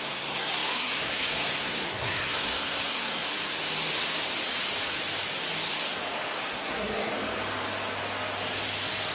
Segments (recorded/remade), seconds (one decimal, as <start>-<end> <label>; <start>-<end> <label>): 0.0-3.3 remade; 3.3-6.4 recorded; 6.4-7.1 remade; 7.1-9.1 recorded